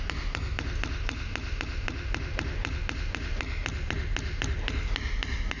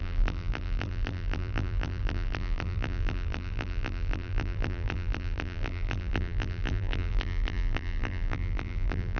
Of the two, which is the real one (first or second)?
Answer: first